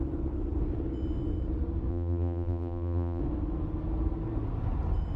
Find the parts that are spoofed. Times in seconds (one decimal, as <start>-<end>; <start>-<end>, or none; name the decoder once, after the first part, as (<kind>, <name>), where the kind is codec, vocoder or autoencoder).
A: 1.9-3.2 (vocoder, BigVGAN v2)